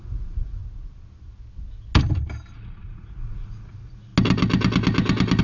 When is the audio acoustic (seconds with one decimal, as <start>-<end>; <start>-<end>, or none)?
0.6-2.6; 4.1-5.4

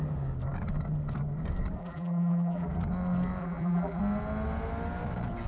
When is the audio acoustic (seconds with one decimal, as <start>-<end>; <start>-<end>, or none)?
0.0-1.8; 2.7-3.4; 4.0-5.5

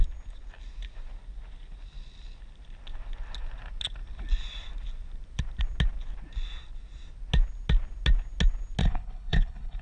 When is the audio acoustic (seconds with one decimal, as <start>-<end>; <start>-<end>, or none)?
0.0-8.8

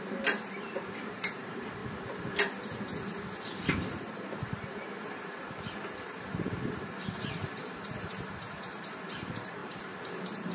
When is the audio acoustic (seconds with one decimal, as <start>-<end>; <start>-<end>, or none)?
1.8-2.6

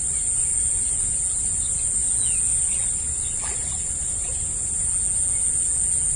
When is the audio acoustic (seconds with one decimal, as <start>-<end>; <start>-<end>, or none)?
0.0-0.5; 1.4-6.2

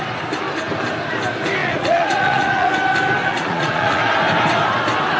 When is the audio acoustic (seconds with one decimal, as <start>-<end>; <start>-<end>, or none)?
0.0-1.6; 2.7-3.2; 4.0-5.2

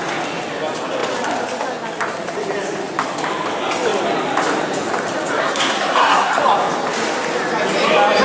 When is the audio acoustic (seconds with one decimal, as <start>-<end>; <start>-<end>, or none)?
0.0-5.4; 6.4-8.2

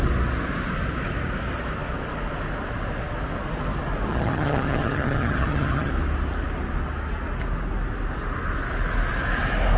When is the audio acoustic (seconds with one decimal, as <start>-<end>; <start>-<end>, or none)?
0.0-4.1; 5.9-9.8